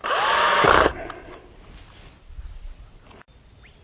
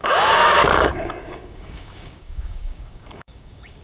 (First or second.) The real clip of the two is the first